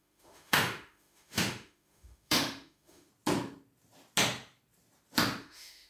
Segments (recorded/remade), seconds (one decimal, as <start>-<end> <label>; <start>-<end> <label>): 0.0-3.1 remade; 3.1-5.4 recorded; 5.4-5.9 remade